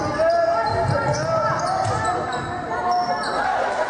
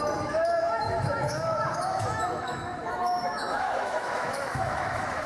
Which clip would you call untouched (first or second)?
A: first